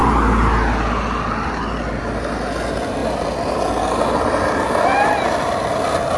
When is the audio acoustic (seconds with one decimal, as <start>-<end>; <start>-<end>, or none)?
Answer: 0.0-6.2